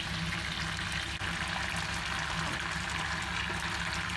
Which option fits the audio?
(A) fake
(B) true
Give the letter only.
B